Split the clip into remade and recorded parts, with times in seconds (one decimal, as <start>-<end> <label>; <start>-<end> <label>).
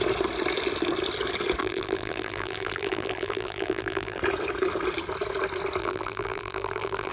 0.0-1.6 recorded; 1.6-4.2 remade; 4.2-5.8 recorded; 5.8-7.1 remade